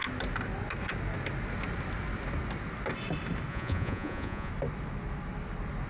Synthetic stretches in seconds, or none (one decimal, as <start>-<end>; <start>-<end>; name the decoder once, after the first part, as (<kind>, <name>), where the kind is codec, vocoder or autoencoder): 3.5-4.5 (vocoder, Vocos)